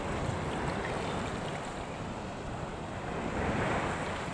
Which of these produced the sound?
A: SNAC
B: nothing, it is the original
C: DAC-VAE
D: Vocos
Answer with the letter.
B